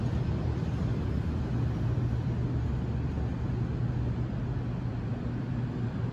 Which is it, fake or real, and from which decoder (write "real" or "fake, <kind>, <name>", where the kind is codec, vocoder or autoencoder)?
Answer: real